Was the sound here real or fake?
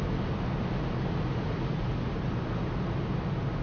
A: real